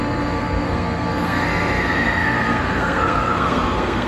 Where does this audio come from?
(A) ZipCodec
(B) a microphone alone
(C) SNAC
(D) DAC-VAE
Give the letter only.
C